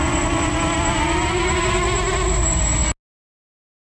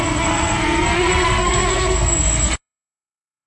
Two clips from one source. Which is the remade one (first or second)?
second